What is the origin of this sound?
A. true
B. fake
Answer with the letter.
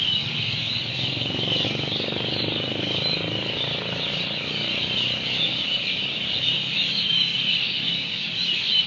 B